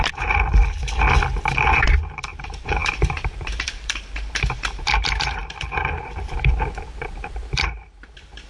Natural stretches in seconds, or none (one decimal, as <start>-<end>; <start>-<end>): 0.6-1.6